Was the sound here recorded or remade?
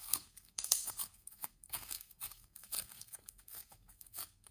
remade